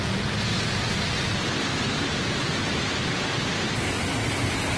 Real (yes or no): yes